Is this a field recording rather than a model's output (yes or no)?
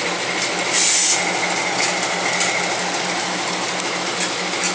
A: yes